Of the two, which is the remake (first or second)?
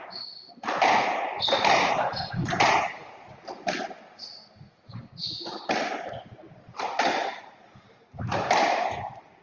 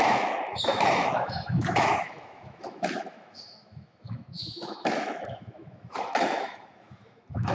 second